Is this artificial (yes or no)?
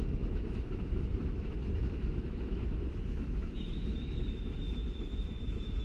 yes